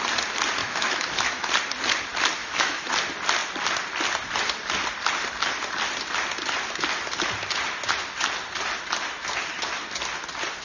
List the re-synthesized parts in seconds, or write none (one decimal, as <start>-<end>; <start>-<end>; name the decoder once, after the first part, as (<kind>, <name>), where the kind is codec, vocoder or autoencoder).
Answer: 0.6-1.5 (autoencoder, DAC-VAE); 2.4-2.9